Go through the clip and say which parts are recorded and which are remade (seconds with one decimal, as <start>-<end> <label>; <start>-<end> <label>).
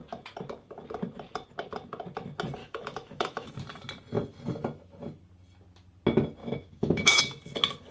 0.0-2.6 recorded; 2.6-3.5 remade; 3.5-6.4 recorded; 6.4-7.2 remade; 7.2-7.9 recorded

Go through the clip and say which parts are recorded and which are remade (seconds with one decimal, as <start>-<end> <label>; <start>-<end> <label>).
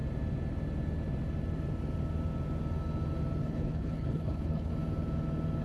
0.0-3.4 recorded; 3.4-4.7 remade; 4.7-5.6 recorded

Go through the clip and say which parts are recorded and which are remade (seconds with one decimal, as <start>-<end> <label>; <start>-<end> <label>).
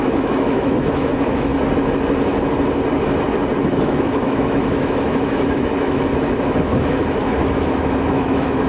0.0-1.5 remade; 1.5-3.6 recorded; 3.6-8.7 remade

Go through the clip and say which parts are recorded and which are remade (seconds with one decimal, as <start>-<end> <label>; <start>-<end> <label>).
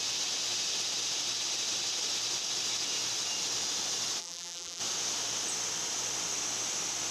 0.0-4.2 recorded; 4.2-4.8 remade; 4.8-7.1 recorded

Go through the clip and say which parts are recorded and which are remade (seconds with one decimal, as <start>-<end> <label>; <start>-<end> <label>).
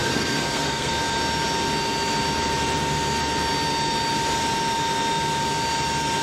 0.0-0.9 remade; 0.9-6.2 recorded